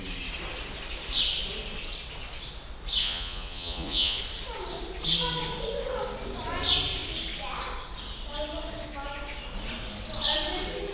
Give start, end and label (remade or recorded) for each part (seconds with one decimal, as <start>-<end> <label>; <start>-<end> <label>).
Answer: 0.0-3.0 recorded; 3.0-4.2 remade; 4.2-10.9 recorded